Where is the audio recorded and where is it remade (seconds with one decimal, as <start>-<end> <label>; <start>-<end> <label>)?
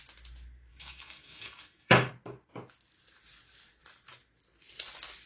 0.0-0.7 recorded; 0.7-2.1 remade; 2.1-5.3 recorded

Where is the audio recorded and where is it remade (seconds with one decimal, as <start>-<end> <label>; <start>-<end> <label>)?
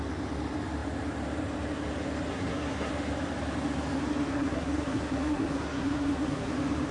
0.0-2.3 recorded; 2.3-2.9 remade; 2.9-4.3 recorded; 4.3-6.5 remade; 6.5-6.9 recorded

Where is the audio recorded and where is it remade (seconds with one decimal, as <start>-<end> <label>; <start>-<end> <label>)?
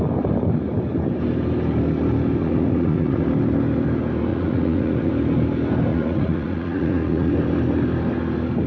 0.0-2.4 recorded; 2.4-3.2 remade; 3.2-4.3 recorded; 4.3-5.1 remade; 5.1-5.9 recorded; 5.9-7.3 remade; 7.3-8.7 recorded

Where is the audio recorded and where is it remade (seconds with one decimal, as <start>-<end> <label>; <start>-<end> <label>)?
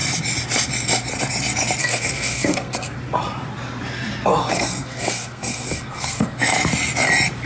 0.0-1.8 recorded; 1.8-2.9 remade; 2.9-4.4 recorded; 4.4-6.4 remade; 6.4-7.5 recorded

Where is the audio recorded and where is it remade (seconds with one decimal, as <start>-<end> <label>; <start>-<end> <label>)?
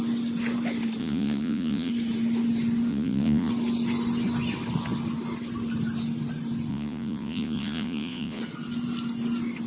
0.0-1.0 recorded; 1.0-1.9 remade; 1.9-2.9 recorded; 2.9-3.5 remade; 3.5-6.7 recorded; 6.7-8.4 remade; 8.4-9.7 recorded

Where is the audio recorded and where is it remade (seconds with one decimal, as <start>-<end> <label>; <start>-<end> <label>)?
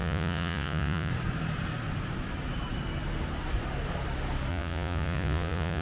0.0-1.1 remade; 1.1-4.5 recorded; 4.5-5.8 remade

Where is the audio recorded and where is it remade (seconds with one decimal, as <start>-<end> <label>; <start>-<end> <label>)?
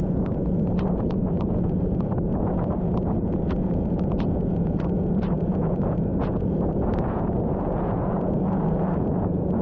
0.0-9.6 remade